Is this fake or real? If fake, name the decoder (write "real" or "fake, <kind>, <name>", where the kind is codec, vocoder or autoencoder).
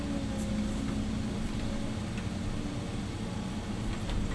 real